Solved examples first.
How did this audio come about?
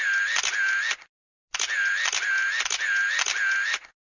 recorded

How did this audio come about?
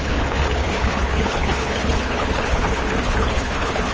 remade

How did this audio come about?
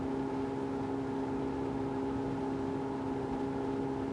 recorded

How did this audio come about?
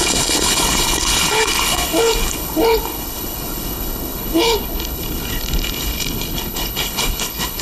remade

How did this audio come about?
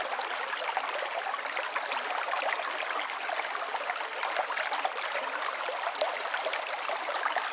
recorded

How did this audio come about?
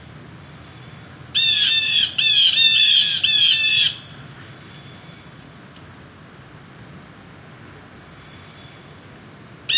recorded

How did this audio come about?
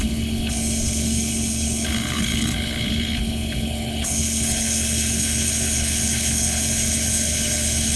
remade